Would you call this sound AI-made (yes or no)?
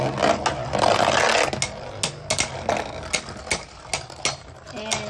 no